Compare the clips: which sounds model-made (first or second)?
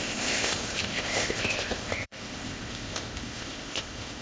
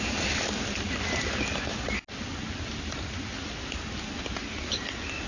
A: first